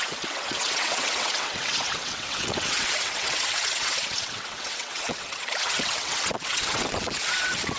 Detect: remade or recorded remade